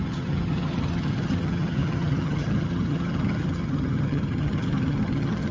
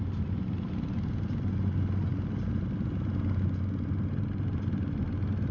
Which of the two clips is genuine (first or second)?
second